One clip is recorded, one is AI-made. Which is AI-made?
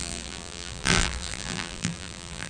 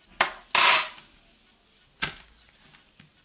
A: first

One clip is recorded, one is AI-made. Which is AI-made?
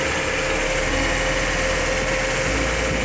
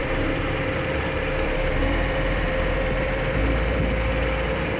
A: second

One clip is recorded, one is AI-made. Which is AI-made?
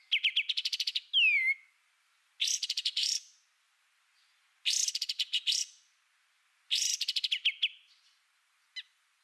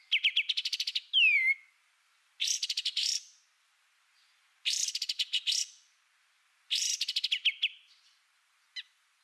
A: second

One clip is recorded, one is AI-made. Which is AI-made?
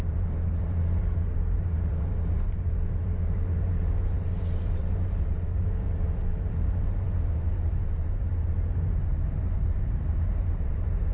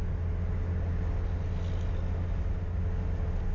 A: first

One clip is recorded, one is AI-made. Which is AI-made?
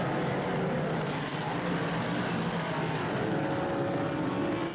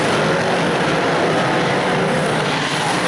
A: second